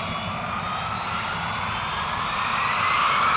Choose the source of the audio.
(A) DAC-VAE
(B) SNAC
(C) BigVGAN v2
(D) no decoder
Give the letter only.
D